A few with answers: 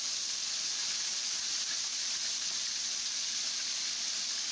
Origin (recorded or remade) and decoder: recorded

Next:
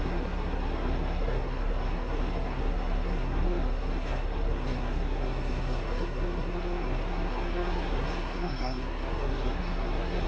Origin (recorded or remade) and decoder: remade, codec, SNAC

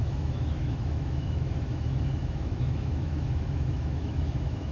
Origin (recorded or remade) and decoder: remade, autoencoder, DAC-VAE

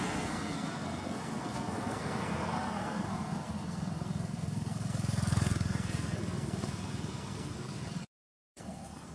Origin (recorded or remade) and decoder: remade, codec, SNAC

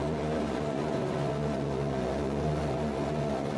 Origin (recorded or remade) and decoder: remade, vocoder, Vocos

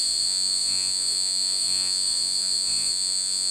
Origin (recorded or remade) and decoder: remade, vocoder, Vocos